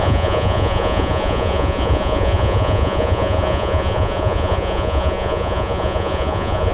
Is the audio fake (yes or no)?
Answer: yes